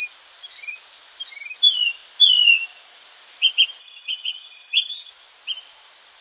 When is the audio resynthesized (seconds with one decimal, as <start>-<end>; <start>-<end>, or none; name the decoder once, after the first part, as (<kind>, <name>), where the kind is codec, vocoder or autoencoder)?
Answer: 3.8-5.1 (vocoder, HiFi-GAN)